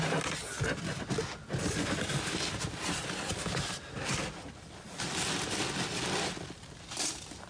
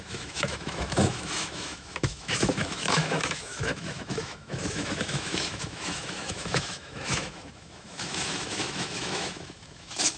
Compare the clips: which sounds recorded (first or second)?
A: first